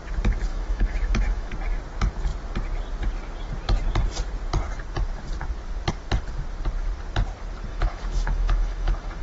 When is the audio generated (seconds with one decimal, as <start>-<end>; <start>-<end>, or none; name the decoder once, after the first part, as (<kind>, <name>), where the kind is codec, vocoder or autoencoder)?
0.5-1.5 (autoencoder, DAC-VAE); 7.7-9.2